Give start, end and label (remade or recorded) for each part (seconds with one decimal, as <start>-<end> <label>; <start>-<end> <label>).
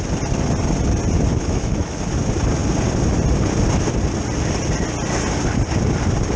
0.0-1.3 recorded; 1.3-2.0 remade; 2.0-6.4 recorded